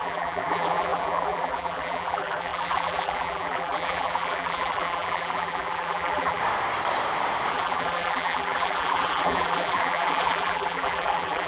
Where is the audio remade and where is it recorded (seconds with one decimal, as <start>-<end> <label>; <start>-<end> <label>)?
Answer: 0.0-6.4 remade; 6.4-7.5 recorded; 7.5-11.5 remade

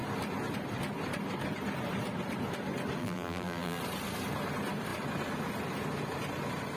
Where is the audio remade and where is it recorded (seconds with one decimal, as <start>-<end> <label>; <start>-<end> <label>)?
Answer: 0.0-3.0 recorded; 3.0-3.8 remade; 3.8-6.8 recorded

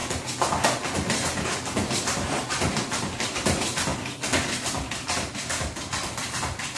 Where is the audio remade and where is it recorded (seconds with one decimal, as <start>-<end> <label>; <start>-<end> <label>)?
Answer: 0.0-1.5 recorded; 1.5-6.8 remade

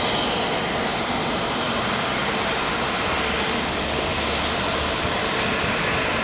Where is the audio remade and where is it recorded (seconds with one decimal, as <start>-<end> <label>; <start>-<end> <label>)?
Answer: 0.0-0.9 recorded; 0.9-1.8 remade; 1.8-6.2 recorded